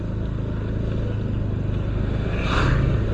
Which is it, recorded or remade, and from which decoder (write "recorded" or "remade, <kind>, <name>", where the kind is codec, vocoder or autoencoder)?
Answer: recorded